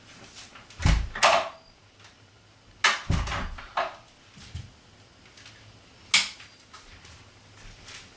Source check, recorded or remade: recorded